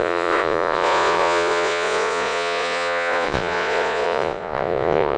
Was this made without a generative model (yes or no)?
no